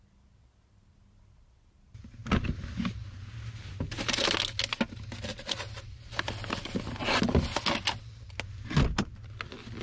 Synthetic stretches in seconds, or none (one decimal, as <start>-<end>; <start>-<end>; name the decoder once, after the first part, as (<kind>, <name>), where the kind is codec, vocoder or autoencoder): none